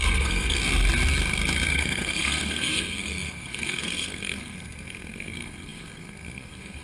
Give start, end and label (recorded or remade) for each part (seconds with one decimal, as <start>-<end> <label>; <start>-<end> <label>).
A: 0.0-0.6 remade; 0.6-1.7 recorded; 1.7-6.8 remade